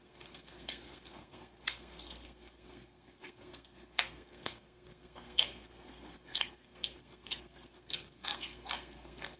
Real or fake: fake